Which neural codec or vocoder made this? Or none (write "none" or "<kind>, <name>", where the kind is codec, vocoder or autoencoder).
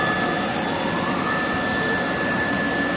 none